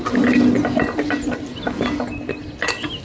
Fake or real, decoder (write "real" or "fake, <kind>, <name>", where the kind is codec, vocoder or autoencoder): real